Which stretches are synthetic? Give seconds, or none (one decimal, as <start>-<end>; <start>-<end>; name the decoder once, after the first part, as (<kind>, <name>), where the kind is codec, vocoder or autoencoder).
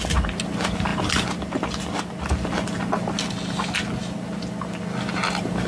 none